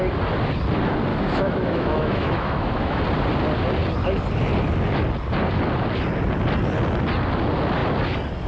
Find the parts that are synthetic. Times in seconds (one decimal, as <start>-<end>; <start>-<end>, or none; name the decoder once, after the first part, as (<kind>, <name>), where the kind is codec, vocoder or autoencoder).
1.1-3.0 (autoencoder, DAC-VAE)